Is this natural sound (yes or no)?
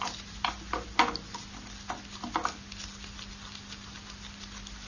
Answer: yes